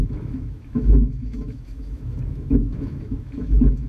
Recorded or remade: remade